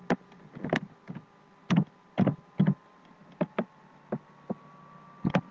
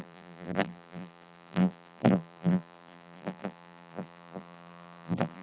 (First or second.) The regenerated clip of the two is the second